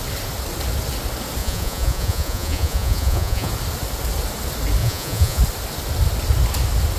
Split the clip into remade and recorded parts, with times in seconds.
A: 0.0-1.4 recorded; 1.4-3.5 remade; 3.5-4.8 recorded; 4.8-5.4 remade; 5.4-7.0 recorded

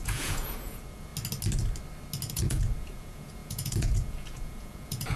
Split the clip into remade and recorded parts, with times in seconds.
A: 0.0-1.1 remade; 1.1-2.3 recorded; 2.3-5.2 remade

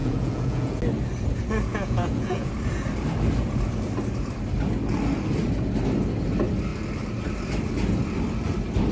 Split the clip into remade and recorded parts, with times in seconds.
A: 0.0-0.8 remade; 0.8-1.7 recorded; 1.7-2.5 remade; 2.5-8.9 recorded

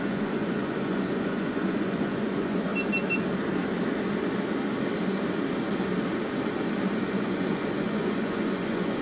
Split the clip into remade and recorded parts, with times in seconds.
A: 0.0-2.7 remade; 2.7-7.1 recorded; 7.1-9.0 remade

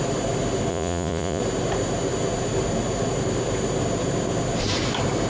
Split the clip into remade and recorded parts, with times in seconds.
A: 0.0-0.7 recorded; 0.7-1.4 remade; 1.4-5.3 recorded

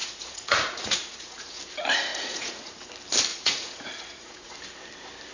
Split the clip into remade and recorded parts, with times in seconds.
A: 0.0-1.6 remade; 1.6-2.1 recorded; 2.1-2.9 remade; 2.9-3.3 recorded; 3.3-4.5 remade; 4.5-5.3 recorded